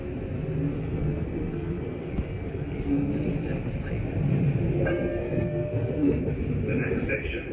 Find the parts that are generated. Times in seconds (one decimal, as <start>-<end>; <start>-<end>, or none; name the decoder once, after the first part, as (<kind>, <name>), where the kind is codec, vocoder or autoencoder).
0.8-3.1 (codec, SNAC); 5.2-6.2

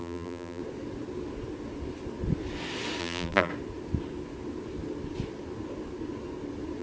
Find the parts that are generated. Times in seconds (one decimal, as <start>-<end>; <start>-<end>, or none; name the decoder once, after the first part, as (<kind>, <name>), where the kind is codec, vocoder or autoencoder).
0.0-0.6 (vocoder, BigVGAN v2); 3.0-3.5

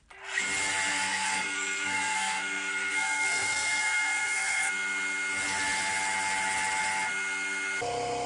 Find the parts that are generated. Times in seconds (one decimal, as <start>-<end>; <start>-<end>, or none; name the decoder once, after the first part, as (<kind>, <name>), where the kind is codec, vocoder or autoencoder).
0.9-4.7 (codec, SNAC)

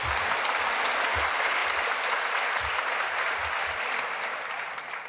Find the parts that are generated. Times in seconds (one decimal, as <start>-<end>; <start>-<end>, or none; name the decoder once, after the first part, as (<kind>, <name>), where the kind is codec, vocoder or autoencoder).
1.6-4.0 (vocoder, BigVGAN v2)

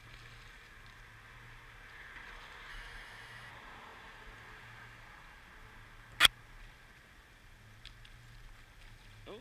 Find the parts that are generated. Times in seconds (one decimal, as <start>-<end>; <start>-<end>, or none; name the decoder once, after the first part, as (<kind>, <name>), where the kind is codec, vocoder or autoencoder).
2.7-3.5 (autoencoder, DAC-VAE)